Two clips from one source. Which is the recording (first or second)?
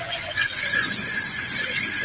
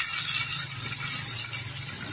second